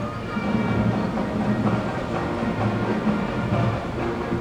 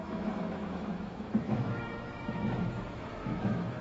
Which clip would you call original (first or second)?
first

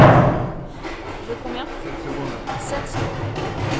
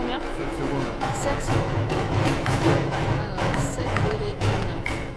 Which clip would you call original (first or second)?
first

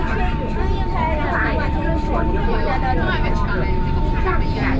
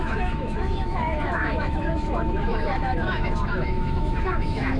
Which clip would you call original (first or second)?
first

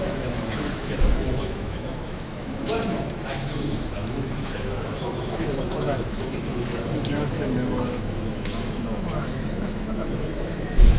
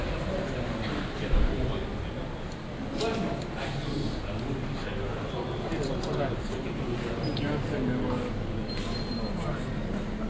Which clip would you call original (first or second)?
second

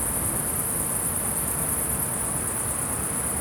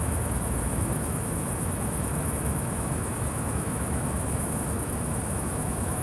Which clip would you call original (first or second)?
first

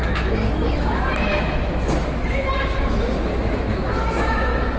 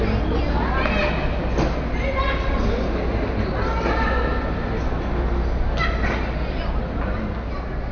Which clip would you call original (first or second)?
second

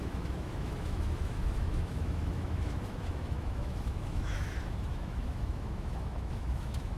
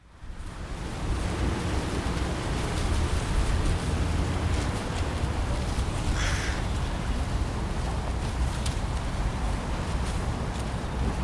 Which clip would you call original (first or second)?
second